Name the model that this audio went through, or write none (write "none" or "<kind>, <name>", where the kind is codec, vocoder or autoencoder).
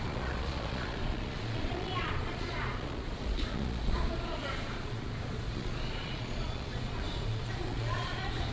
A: vocoder, Vocos